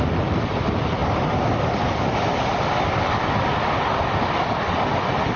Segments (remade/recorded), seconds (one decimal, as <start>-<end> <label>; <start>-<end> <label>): 0.0-5.4 recorded